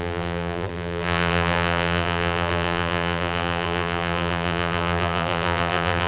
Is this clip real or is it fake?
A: fake